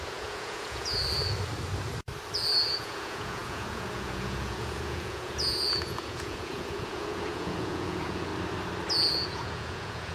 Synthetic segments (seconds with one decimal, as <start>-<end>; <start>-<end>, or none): 0.0-1.0; 2.7-8.3; 9.1-10.1